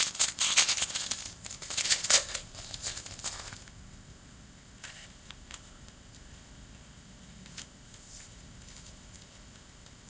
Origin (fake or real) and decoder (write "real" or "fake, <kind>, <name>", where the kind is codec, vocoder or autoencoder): fake, codec, ZipCodec